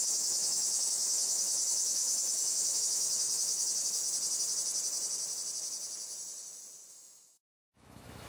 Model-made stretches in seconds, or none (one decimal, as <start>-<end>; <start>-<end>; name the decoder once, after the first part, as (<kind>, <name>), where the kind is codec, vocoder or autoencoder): 0.0-4.0 (autoencoder, DAC-VAE); 6.9-8.3

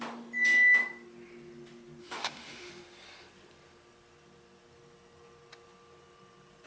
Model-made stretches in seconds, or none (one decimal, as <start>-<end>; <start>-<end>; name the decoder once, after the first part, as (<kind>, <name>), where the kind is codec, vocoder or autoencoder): 2.0-2.7 (autoencoder, DAC-VAE)